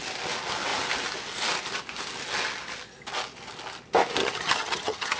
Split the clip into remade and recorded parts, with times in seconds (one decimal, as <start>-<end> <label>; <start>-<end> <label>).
0.0-4.2 recorded; 4.2-5.2 remade